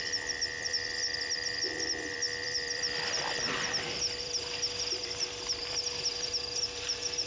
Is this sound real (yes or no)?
no